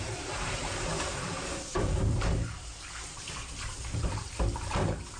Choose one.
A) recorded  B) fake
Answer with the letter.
B